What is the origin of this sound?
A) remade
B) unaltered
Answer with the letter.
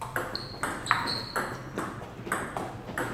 B